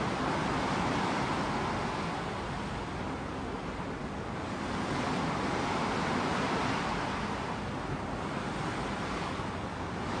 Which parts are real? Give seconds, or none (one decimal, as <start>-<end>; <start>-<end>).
0.0-10.2